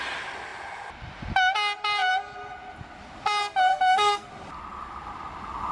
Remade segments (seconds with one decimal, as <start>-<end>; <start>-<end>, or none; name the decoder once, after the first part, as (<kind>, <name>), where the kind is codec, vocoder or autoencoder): 3.7-4.3 (codec, SNAC)